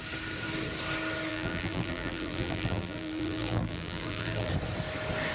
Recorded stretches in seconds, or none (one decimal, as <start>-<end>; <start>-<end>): 0.0-1.3; 4.5-5.3